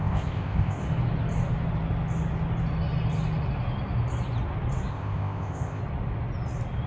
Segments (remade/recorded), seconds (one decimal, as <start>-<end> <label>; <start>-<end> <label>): 0.0-0.8 remade; 0.8-4.9 recorded; 4.9-5.8 remade; 5.8-6.9 recorded

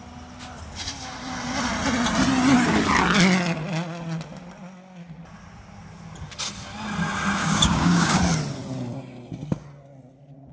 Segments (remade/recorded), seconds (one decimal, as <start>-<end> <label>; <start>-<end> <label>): 0.0-7.4 recorded; 7.4-8.2 remade; 8.2-10.5 recorded

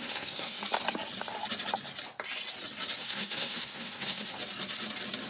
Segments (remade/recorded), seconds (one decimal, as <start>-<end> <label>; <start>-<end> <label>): 0.0-0.6 remade; 0.6-3.0 recorded; 3.0-4.3 remade; 4.3-5.3 recorded